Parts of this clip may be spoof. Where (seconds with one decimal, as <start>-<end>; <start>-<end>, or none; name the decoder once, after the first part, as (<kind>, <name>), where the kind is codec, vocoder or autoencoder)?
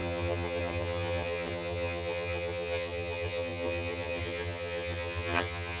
0.0-5.8 (vocoder, HiFi-GAN)